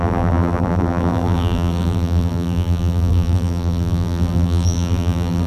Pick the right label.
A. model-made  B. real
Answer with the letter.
A